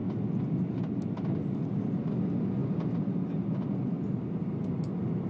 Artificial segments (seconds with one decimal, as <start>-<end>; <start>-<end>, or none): none